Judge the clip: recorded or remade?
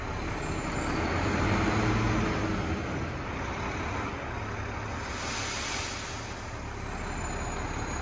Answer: recorded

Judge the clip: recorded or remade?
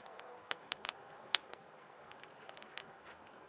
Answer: remade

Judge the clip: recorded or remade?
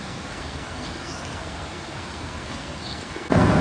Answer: remade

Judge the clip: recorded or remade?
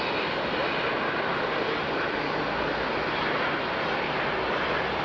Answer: recorded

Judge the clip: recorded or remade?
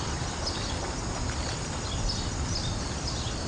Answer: recorded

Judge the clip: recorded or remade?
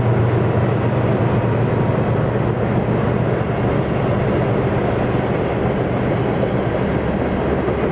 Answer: recorded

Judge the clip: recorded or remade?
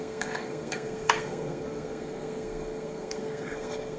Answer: remade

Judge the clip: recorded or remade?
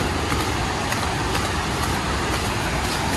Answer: recorded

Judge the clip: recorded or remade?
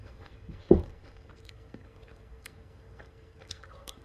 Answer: remade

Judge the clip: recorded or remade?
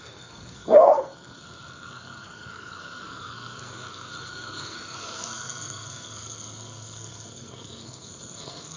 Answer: remade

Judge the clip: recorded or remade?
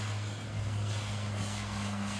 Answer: remade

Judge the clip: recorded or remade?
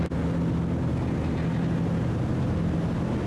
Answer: recorded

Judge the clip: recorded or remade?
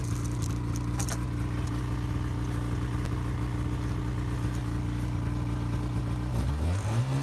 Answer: recorded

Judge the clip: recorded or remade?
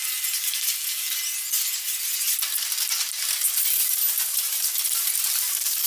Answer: recorded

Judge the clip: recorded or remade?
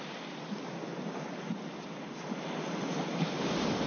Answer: recorded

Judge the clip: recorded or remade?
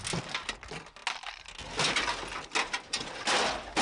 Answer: recorded